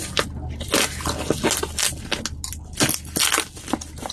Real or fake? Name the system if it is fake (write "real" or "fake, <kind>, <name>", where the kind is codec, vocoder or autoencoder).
real